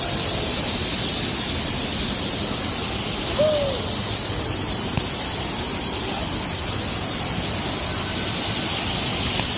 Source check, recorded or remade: recorded